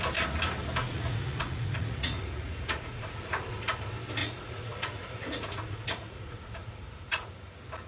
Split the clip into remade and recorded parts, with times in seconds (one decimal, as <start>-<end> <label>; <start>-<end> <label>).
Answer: 0.0-0.8 recorded; 0.8-3.7 remade; 3.7-4.2 recorded; 4.2-7.3 remade; 7.3-7.9 recorded